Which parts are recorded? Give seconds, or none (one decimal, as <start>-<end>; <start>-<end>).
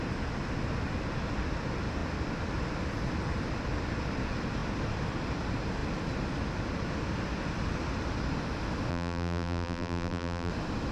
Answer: 0.0-8.9; 10.5-10.9